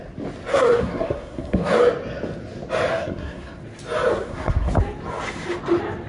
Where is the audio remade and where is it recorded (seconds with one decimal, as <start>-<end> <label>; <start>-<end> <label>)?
0.0-0.5 recorded; 0.5-1.8 remade; 1.8-2.9 recorded; 2.9-3.6 remade; 3.6-4.1 recorded; 4.1-4.7 remade; 4.7-6.1 recorded